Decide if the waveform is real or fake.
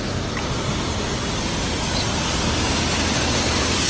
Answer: real